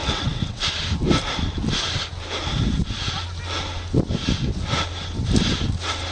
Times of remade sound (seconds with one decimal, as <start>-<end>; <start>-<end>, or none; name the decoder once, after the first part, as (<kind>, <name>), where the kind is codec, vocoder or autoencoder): 0.0-0.6 (vocoder, WaveNeXt)